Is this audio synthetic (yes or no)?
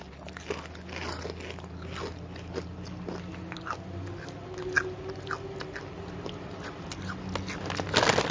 no